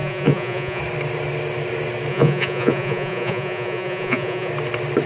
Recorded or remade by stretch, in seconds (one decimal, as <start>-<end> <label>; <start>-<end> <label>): 0.0-0.8 remade; 0.8-2.1 recorded; 2.1-4.5 remade; 4.5-5.1 recorded